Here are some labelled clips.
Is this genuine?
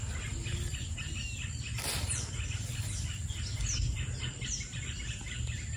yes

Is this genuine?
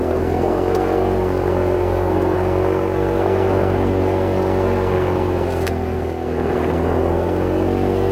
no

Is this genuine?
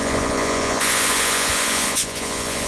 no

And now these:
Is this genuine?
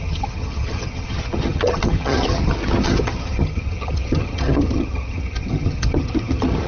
no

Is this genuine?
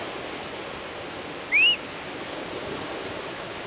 yes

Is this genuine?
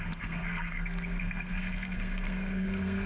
no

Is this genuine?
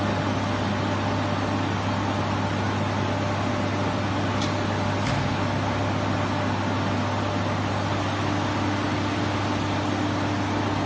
yes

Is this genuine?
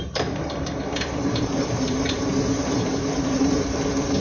no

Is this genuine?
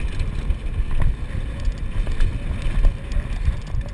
yes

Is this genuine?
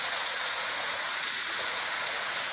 no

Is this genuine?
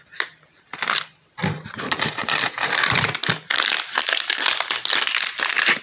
no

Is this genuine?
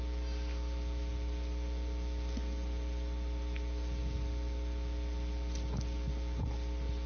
yes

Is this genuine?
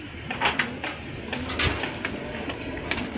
yes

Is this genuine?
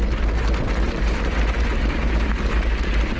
yes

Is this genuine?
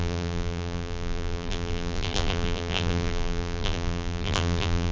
no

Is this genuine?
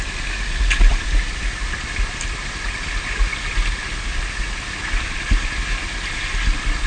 yes